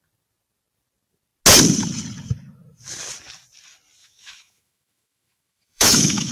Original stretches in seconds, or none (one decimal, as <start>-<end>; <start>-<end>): 0.0-4.0

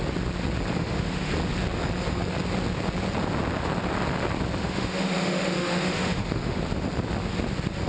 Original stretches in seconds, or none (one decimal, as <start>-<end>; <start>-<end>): 0.0-0.8; 1.3-4.6; 6.6-7.9

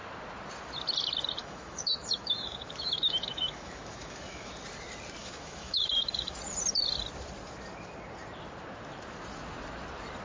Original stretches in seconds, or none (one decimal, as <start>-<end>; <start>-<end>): 0.0-1.4; 4.5-5.2; 6.4-10.2

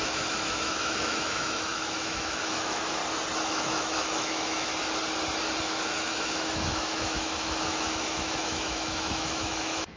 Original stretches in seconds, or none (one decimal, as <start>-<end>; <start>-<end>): 3.0-3.5; 4.7-5.6

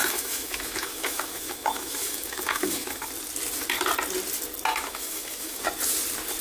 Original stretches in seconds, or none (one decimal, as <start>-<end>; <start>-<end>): 3.1-4.7; 5.6-6.4

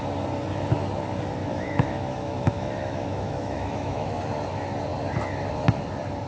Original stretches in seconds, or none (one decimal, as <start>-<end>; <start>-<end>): 0.0-1.4; 4.2-6.3

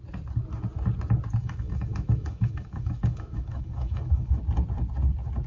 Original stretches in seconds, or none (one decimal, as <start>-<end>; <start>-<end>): 0.0-1.4; 4.4-5.5